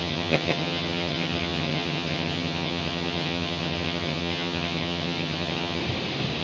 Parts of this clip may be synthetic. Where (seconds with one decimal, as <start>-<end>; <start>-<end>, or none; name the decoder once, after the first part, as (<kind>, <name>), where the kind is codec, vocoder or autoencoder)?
0.0-5.8 (vocoder, HiFi-GAN)